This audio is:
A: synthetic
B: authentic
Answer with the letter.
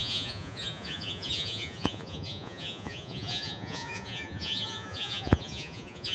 A